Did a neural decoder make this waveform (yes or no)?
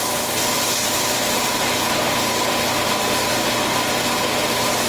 no